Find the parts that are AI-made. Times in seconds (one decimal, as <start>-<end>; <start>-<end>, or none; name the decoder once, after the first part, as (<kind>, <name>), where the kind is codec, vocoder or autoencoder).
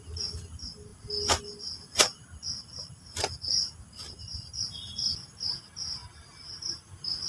none